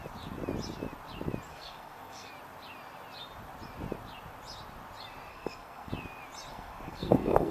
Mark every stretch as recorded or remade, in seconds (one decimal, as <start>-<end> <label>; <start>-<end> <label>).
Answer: 0.0-1.5 recorded; 1.5-2.3 remade; 2.3-5.3 recorded; 5.3-5.9 remade; 5.9-6.5 recorded; 6.5-7.5 remade